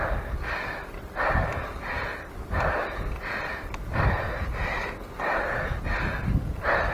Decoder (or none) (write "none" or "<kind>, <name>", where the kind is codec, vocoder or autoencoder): none